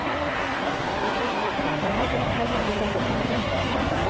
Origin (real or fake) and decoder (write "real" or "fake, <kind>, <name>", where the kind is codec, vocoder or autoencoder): fake, codec, SNAC